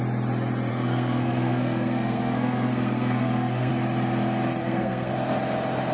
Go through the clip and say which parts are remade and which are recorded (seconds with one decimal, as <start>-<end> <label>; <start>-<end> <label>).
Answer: 0.0-0.7 recorded; 0.7-3.7 remade; 3.7-4.6 recorded; 4.6-5.1 remade; 5.1-5.9 recorded